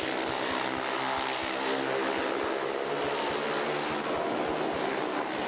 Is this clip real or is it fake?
real